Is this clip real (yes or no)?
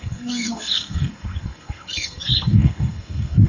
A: no